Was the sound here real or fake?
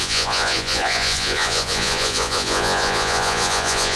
fake